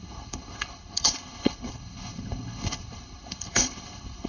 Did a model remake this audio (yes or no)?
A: yes